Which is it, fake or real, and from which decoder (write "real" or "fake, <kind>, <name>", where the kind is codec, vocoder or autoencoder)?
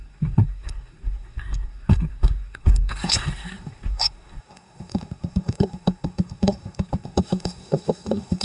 fake, codec, SNAC